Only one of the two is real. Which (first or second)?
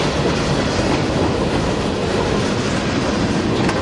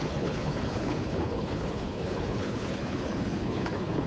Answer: first